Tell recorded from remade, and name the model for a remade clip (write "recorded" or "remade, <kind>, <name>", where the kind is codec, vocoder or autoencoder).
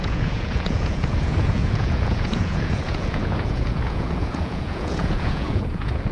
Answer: remade, vocoder, Vocos